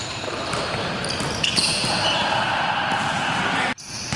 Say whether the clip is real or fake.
fake